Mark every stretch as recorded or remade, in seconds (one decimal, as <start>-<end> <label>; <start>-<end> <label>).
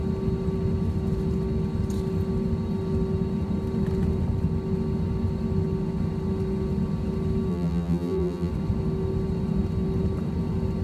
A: 0.0-7.5 recorded; 7.5-8.5 remade; 8.5-10.8 recorded